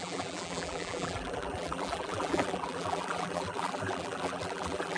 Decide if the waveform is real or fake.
fake